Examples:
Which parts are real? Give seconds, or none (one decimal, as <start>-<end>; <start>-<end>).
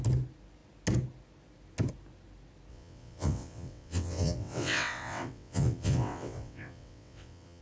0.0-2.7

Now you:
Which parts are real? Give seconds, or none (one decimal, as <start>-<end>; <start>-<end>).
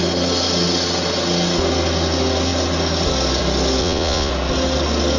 0.0-3.8; 4.3-5.2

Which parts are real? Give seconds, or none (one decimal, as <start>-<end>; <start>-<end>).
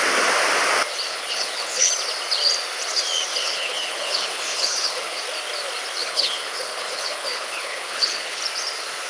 0.0-1.1; 1.9-3.3; 5.2-6.0; 8.4-9.1